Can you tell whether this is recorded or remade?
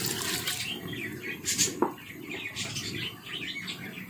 recorded